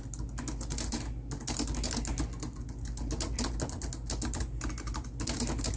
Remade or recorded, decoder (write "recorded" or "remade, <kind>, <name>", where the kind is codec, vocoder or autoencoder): recorded